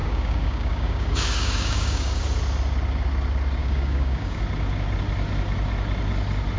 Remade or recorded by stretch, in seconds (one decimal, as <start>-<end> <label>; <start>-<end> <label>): 0.0-2.2 remade; 2.2-3.6 recorded; 3.6-4.4 remade; 4.4-6.6 recorded